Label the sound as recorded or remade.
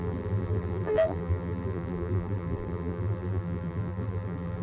remade